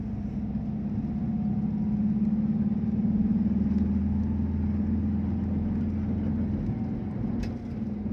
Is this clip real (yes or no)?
yes